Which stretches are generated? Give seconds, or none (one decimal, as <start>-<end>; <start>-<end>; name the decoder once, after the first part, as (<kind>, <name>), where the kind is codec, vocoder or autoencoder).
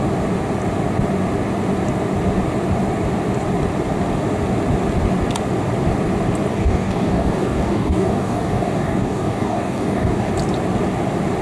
6.5-10.3 (codec, DAC)